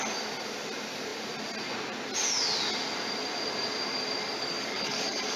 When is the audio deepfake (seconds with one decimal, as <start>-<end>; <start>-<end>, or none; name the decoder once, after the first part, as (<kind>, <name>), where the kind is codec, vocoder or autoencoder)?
4.3-5.4 (codec, DAC)